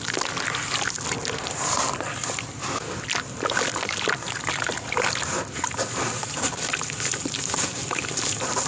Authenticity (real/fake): real